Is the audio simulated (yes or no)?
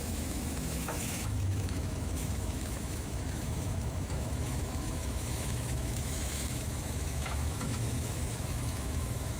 yes